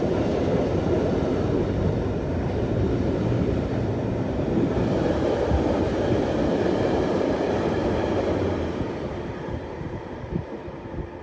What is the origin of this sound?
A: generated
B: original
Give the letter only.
A